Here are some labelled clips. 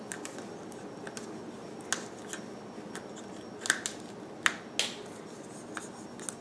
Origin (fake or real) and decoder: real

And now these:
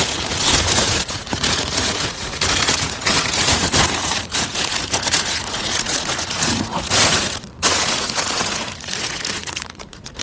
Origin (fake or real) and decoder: fake, vocoder, Vocos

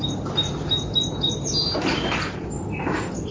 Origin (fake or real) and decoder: real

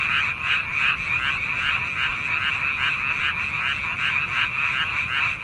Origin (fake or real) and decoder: real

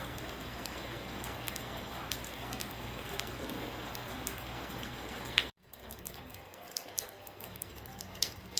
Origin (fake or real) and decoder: fake, codec, SNAC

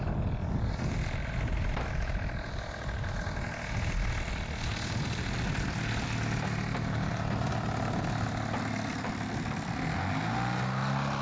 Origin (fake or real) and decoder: real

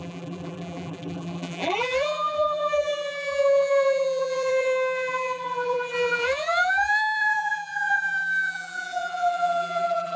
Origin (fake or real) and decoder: fake, vocoder, BigVGAN v2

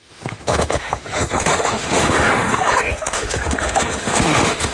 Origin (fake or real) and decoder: fake, autoencoder, DAC-VAE